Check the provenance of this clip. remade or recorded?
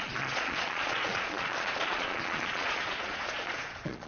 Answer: remade